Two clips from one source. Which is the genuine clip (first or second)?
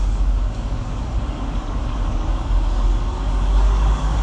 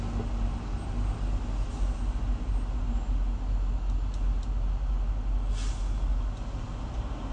second